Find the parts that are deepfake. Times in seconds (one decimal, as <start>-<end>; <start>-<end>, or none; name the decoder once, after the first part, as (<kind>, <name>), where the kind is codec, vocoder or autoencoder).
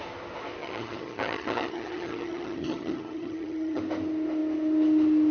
0.6-3.8 (vocoder, HiFi-GAN)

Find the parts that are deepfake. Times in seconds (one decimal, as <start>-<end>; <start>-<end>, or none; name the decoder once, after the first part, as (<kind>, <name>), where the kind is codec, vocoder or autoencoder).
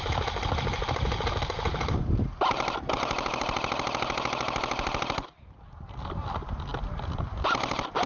none